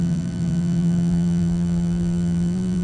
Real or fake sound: fake